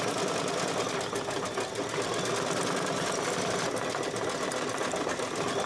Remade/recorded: recorded